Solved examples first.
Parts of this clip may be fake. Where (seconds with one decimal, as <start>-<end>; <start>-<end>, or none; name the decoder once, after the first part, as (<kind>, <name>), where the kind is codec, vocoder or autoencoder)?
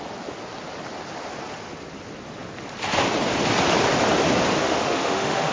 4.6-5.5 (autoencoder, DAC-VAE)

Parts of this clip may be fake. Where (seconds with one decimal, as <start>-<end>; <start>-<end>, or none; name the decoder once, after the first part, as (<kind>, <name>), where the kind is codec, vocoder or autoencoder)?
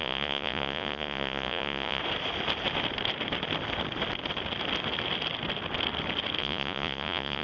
0.0-2.0 (vocoder, Vocos); 6.4-7.4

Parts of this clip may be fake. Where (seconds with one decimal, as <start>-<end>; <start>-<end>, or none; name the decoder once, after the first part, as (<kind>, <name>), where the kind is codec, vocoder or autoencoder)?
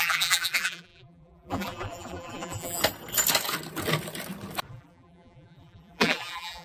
0.0-2.8 (vocoder, BigVGAN v2); 4.7-6.6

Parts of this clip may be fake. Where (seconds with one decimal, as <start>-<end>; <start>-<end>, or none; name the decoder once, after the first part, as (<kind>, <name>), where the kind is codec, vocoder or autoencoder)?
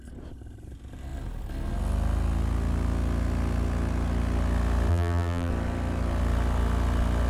4.9-5.5 (vocoder, BigVGAN v2)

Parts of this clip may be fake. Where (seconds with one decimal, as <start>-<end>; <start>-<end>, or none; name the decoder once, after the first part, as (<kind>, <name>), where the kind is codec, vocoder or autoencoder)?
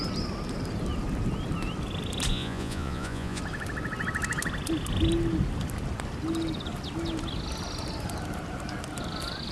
2.3-3.4 (vocoder, Vocos)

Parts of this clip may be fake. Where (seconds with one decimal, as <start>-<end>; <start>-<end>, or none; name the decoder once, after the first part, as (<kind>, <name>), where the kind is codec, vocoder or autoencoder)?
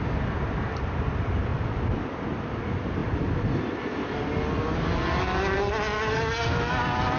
none